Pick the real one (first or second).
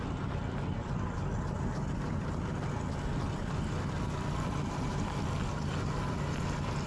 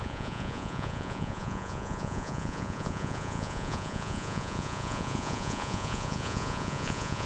first